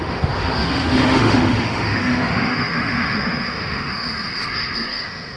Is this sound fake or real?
fake